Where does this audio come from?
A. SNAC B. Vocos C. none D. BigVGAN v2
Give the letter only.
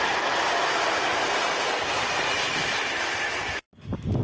C